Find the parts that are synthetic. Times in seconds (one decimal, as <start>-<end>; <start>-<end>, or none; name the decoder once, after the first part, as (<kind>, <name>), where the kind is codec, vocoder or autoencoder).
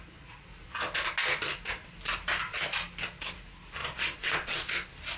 3.8-4.7 (vocoder, Vocos)